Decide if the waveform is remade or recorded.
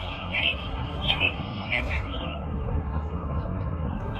remade